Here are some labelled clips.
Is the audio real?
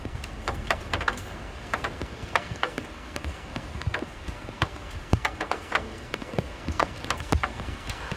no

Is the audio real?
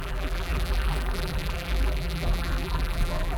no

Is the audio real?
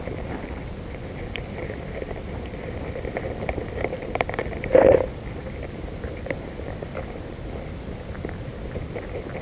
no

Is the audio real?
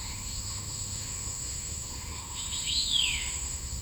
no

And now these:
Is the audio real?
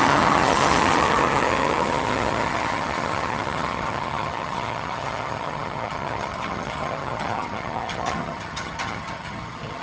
no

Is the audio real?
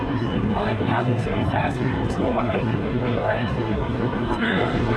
no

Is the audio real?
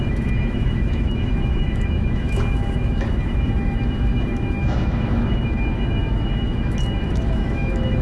no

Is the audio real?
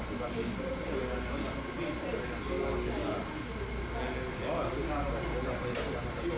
yes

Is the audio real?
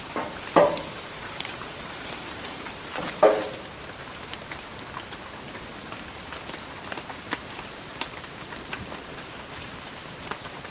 no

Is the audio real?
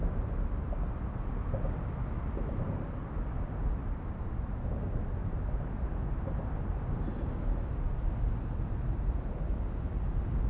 yes